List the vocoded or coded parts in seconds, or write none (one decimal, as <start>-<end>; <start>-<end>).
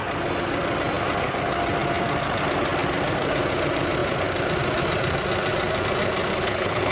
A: 6.3-6.9